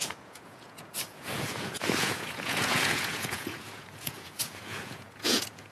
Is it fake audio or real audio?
fake